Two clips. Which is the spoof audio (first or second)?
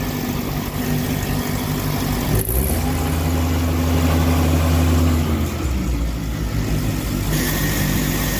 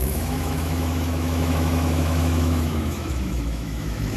second